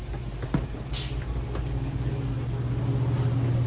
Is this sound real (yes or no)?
yes